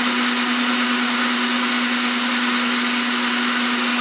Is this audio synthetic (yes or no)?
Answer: no